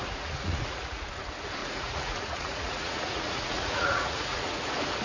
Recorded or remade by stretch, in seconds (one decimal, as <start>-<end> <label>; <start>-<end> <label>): 0.0-1.0 remade; 1.0-1.6 recorded; 1.6-4.6 remade; 4.6-5.0 recorded